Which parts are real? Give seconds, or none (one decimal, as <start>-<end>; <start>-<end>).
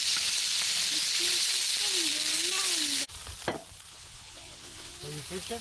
0.0-3.9; 5.0-5.6